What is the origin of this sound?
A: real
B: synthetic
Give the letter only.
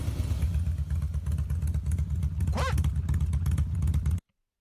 A